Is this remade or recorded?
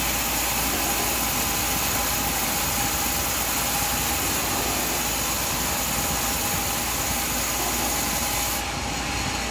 recorded